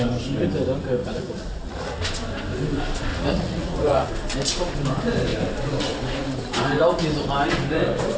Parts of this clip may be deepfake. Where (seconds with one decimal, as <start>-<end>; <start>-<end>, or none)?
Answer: 1.0-2.0; 3.1-4.1